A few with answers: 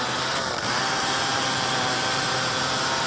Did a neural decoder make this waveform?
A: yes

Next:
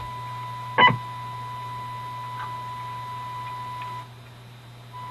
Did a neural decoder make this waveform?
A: no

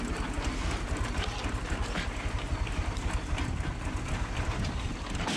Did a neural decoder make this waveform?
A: no